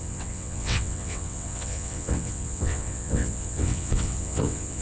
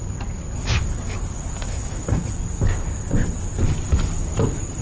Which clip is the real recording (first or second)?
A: second